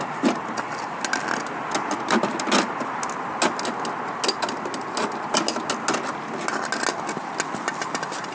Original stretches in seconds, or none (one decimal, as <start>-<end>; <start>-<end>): 0.0-8.3